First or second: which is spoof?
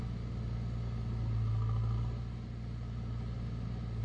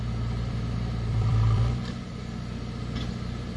second